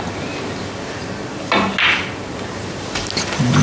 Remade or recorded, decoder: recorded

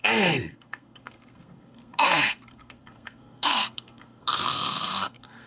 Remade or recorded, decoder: remade, codec, SNAC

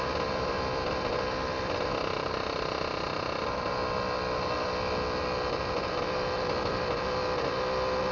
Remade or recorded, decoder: recorded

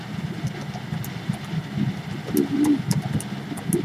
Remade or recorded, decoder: recorded